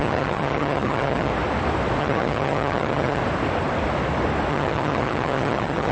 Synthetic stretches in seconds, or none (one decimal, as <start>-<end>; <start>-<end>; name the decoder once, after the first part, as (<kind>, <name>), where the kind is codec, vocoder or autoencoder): 0.0-1.3 (vocoder, HiFi-GAN); 2.0-3.2; 4.5-5.9